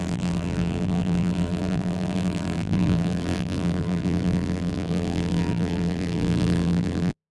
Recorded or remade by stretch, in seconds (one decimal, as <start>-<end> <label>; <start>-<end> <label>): 0.0-7.3 remade